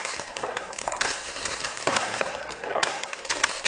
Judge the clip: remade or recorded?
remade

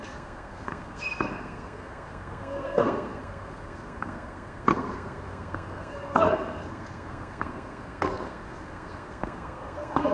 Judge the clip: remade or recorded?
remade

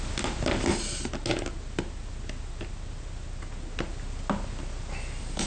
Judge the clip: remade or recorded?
recorded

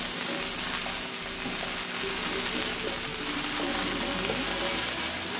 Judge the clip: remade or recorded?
recorded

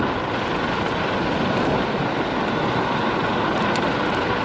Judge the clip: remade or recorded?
recorded